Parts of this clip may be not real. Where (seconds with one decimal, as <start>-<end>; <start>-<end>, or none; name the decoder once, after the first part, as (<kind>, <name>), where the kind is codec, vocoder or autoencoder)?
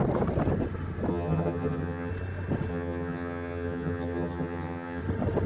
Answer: 1.1-2.1 (vocoder, HiFi-GAN); 2.7-5.0